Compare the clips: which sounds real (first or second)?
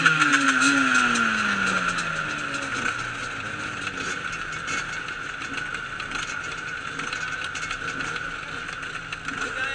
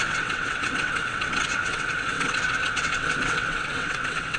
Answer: first